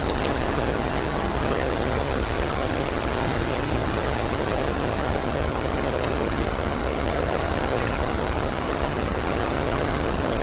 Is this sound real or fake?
fake